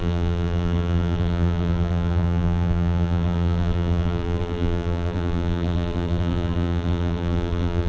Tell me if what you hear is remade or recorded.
remade